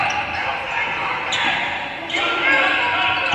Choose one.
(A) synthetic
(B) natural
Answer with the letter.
B